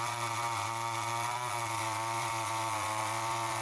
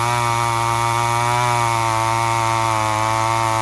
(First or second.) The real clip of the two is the second